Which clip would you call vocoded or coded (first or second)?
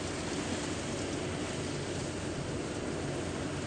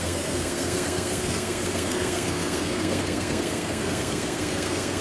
second